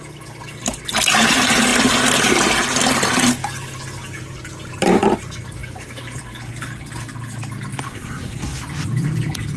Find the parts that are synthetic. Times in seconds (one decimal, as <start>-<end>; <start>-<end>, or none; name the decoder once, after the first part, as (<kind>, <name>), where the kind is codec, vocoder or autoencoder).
7.9-8.6 (codec, SNAC)